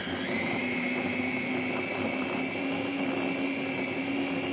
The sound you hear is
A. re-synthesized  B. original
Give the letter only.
B